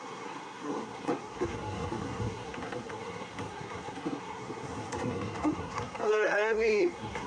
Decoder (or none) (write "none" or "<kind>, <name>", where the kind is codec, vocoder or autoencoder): codec, SNAC